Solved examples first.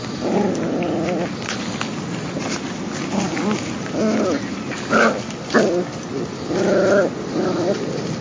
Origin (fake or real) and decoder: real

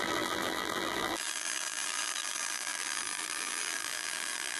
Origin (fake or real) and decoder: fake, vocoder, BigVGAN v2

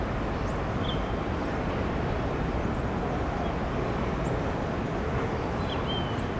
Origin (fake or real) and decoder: real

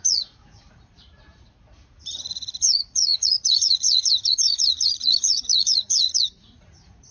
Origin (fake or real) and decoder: fake, vocoder, Vocos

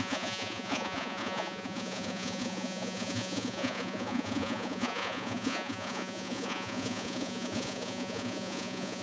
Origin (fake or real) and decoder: fake, vocoder, Vocos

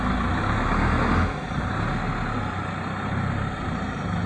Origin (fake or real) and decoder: real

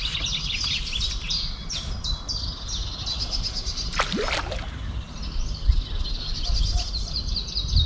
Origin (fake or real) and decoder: real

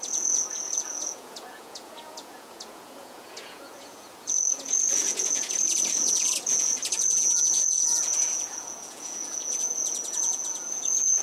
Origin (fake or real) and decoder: fake, vocoder, Vocos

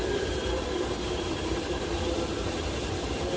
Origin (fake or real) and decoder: fake, vocoder, BigVGAN v2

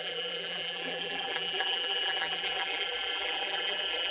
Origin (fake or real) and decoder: fake, vocoder, BigVGAN v2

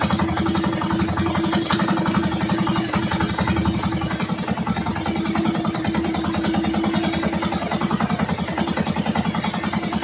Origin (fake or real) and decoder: real